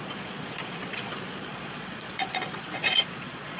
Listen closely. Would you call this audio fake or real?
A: fake